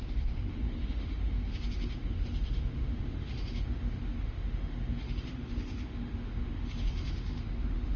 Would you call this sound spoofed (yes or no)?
yes